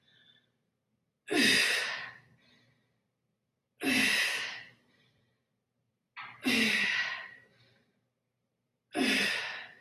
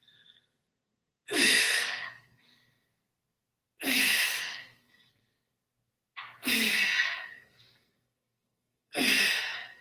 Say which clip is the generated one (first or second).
second